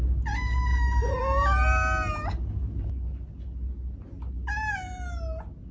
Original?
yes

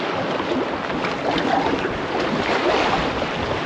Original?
yes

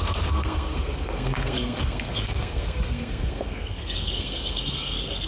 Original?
no